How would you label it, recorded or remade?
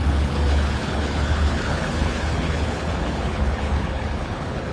remade